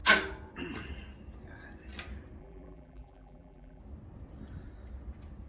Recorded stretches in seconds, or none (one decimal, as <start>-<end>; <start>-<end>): 0.0-2.4; 3.8-5.5